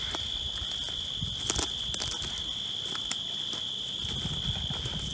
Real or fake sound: real